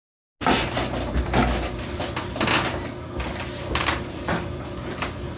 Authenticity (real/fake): real